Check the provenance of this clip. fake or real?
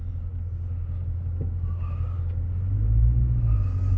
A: real